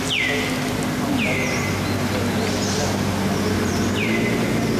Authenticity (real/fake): real